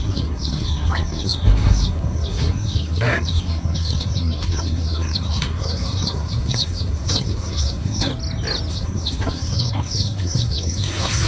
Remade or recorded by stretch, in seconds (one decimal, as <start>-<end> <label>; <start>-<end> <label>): 0.0-8.1 remade; 8.1-8.7 recorded; 8.7-11.3 remade